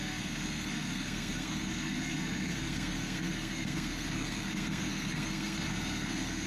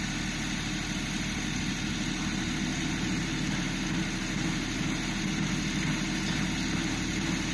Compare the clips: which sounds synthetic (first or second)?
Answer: first